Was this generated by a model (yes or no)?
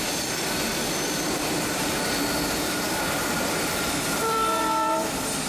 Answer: yes